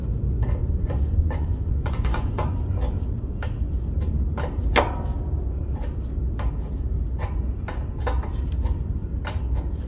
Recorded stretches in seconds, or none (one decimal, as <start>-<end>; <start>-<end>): 0.0-0.6; 2.5-9.9

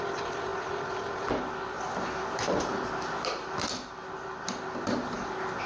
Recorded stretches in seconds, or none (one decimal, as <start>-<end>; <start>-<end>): 0.0-5.7

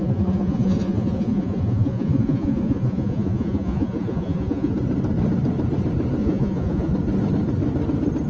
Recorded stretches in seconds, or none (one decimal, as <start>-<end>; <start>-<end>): 4.7-6.2; 6.9-8.3

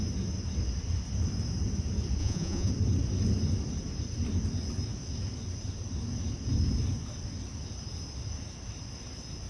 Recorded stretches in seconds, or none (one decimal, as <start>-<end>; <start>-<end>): 0.0-2.2; 2.7-9.5

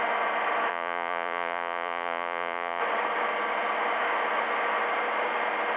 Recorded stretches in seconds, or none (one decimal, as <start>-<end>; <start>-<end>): 0.0-0.7; 2.8-5.8

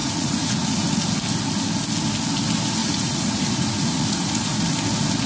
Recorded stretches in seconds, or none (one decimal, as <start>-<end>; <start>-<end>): 1.0-2.8; 4.6-5.3